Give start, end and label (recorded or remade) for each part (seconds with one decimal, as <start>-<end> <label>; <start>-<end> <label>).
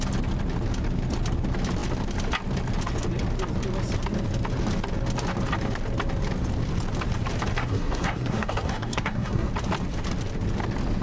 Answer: 0.0-7.6 recorded; 7.6-9.5 remade; 9.5-11.0 recorded